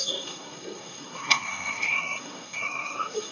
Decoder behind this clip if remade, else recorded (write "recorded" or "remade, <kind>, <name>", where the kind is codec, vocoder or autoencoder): remade, codec, SNAC